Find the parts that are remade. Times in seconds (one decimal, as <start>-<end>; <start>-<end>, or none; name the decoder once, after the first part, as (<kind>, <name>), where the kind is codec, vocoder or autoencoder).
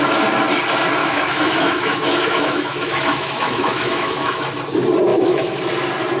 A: 1.0-4.4 (autoencoder, DAC-VAE); 5.1-5.7